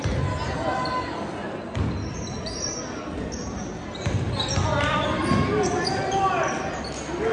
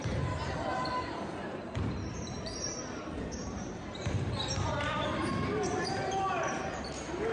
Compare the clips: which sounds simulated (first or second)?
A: second